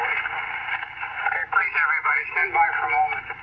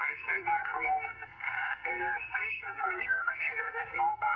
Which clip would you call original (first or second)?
first